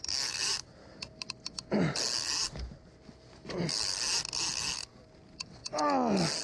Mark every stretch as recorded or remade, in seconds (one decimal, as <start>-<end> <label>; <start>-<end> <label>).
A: 0.0-6.4 recorded